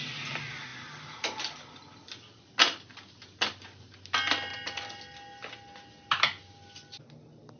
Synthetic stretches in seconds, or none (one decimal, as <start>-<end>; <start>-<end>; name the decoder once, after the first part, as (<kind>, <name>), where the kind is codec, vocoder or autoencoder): none